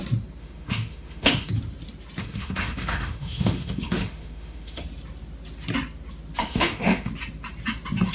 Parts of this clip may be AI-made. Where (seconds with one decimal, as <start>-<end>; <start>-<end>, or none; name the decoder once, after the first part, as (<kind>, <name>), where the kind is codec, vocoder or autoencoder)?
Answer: 0.4-1.5 (autoencoder, DAC-VAE); 2.2-4.8; 6.4-7.1